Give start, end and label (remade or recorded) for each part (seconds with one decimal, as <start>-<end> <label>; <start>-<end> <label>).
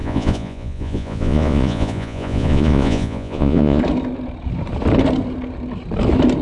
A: 0.0-3.8 remade; 3.8-6.4 recorded